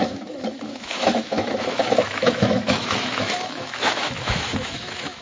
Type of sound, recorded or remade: remade